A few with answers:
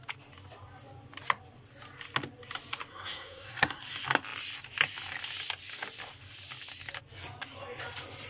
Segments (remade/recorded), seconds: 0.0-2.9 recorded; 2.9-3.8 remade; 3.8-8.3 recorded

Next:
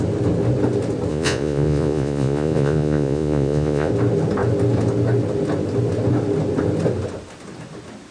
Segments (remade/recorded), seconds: 0.0-1.1 recorded; 1.1-3.9 remade; 3.9-8.1 recorded

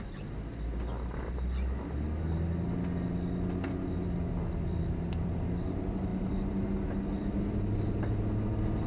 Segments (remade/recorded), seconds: 0.0-8.9 recorded

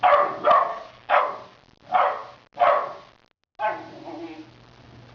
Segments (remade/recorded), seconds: 0.0-0.7 recorded; 0.7-1.2 remade; 1.2-5.1 recorded

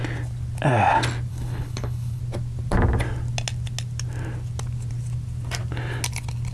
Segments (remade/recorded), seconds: 0.0-1.3 recorded; 1.3-2.2 remade; 2.2-6.5 recorded

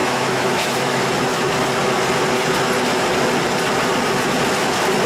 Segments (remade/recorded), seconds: 0.0-1.0 remade; 1.0-5.1 recorded

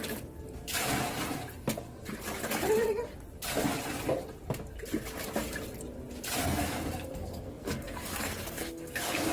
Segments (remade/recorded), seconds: 0.0-6.4 recorded; 6.4-9.3 remade